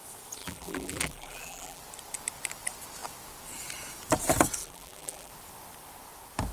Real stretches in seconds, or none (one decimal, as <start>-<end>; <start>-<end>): 0.0-0.4; 1.8-4.6; 5.3-6.5

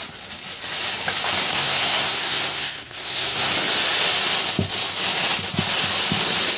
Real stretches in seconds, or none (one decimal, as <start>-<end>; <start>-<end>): 0.0-1.5; 3.5-6.6

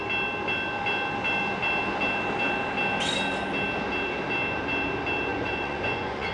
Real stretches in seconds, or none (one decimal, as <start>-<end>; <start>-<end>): 0.0-5.3

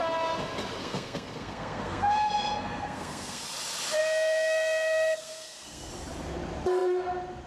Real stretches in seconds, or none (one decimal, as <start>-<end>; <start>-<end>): 0.0-0.8; 3.4-4.0; 5.9-7.5

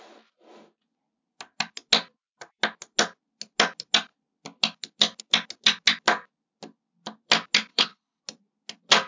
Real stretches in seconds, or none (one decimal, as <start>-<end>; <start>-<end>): 0.0-7.7; 8.2-9.1

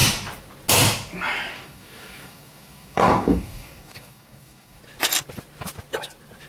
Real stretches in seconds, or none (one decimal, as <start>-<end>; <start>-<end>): 0.0-1.5; 4.8-6.5